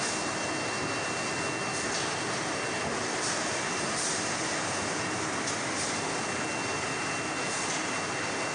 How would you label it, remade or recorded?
recorded